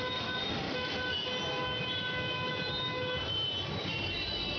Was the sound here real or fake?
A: real